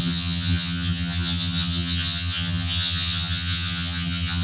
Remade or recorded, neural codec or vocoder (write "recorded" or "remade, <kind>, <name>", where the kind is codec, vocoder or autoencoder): remade, vocoder, HiFi-GAN